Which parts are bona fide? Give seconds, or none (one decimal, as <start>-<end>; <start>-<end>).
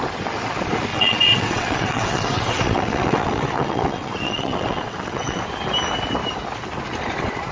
0.0-0.9; 5.4-7.5